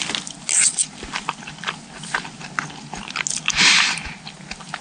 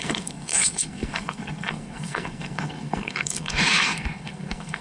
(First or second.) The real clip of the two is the first